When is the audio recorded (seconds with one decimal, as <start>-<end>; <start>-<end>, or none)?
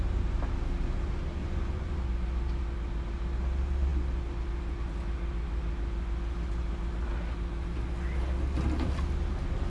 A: 0.0-1.4; 2.0-9.7